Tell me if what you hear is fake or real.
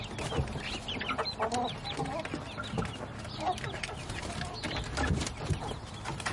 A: real